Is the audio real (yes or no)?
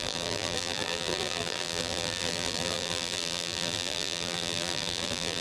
no